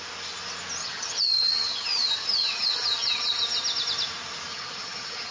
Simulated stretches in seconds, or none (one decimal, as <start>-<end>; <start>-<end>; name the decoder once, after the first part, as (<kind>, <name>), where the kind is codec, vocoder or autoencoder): 0.8-3.4 (vocoder, HiFi-GAN); 4.5-5.3